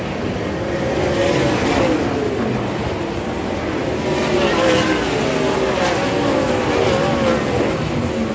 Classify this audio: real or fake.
real